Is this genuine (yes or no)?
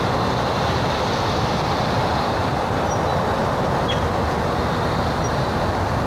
yes